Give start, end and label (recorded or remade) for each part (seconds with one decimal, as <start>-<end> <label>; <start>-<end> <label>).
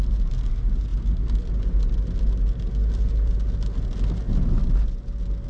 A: 0.0-5.5 recorded